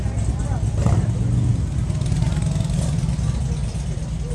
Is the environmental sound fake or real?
real